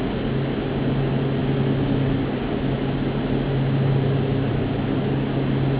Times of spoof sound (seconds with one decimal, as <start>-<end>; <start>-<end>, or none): none